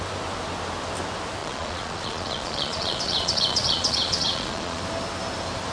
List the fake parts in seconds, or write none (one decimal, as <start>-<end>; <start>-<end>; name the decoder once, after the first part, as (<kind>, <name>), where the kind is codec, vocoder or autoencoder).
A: 1.4-4.8 (vocoder, Vocos)